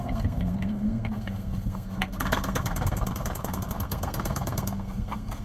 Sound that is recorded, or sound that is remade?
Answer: remade